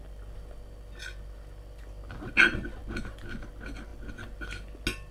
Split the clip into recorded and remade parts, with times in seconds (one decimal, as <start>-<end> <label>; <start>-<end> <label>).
0.0-5.1 recorded